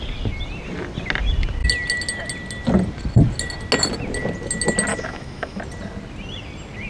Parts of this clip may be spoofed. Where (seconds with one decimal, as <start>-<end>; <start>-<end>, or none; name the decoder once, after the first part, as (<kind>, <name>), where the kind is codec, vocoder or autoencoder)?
4.9-5.6 (autoencoder, DAC-VAE)